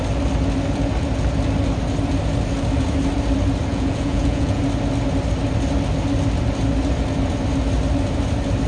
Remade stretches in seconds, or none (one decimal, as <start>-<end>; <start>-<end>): 3.7-4.6